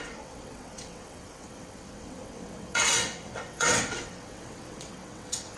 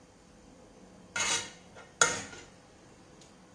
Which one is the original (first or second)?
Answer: second